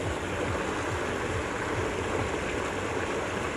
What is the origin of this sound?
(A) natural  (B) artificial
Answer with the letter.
A